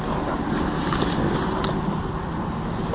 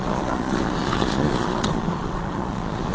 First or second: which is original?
first